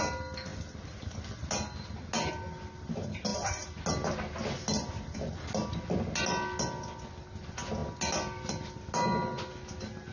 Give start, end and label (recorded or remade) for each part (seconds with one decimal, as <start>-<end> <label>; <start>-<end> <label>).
0.0-10.1 recorded